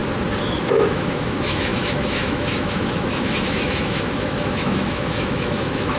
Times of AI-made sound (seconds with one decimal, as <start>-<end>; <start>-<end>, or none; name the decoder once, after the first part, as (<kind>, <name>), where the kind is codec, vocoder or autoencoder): 0.6-6.0 (autoencoder, DAC-VAE)